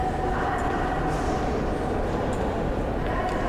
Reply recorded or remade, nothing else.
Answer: recorded